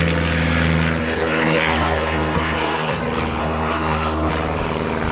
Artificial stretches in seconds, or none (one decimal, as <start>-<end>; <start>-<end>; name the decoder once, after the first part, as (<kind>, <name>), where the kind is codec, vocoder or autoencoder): 1.0-3.0 (codec, SNAC); 3.4-4.3